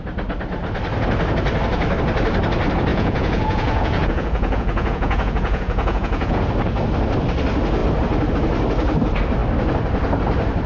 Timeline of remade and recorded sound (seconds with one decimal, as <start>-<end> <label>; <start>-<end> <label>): 0.0-2.9 recorded; 2.9-6.4 remade; 6.4-10.7 recorded